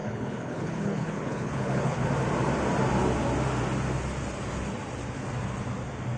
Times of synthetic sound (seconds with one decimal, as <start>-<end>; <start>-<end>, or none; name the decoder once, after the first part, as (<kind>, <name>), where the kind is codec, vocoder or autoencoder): 0.0-2.1 (codec, HILCodec)